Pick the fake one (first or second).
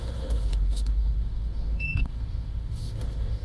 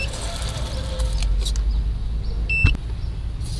first